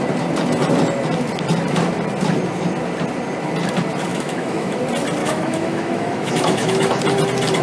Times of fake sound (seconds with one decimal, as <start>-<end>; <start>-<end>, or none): 4.1-4.8; 5.2-7.0